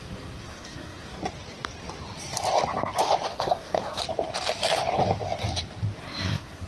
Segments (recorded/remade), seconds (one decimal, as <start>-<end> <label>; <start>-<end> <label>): 0.0-1.2 remade; 1.2-3.3 recorded; 3.3-4.0 remade; 4.0-6.0 recorded; 6.0-6.7 remade